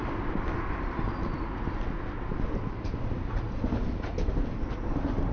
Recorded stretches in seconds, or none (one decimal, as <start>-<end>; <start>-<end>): 1.4-2.3; 3.2-4.1; 4.7-5.3